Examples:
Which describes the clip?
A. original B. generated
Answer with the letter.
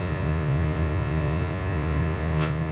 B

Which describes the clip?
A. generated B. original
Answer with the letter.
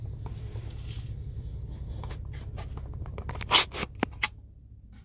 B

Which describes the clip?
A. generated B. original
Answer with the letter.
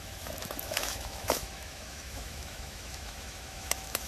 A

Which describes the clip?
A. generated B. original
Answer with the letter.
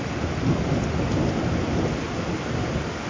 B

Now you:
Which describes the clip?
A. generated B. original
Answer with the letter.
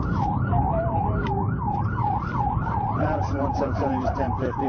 A